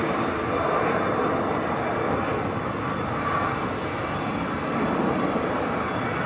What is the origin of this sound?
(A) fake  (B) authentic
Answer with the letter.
B